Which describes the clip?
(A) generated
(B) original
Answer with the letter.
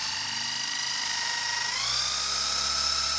B